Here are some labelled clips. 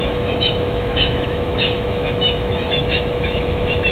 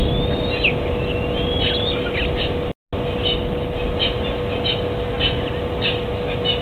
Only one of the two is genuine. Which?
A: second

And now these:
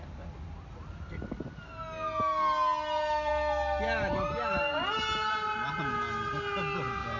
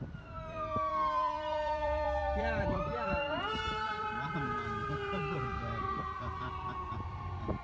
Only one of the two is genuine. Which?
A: first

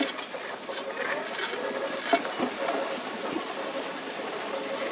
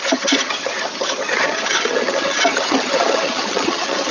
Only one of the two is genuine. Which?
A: first